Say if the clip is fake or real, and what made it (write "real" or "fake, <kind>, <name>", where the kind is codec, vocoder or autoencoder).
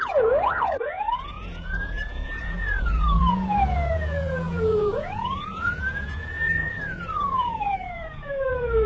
fake, vocoder, Vocos